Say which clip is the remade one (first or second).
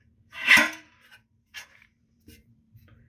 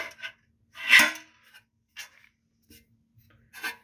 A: first